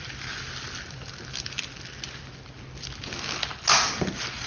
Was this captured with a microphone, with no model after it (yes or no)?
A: yes